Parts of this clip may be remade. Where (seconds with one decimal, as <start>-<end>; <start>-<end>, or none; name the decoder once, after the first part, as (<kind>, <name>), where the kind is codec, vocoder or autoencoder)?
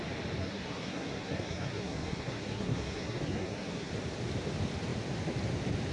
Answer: 0.4-3.9 (codec, SNAC)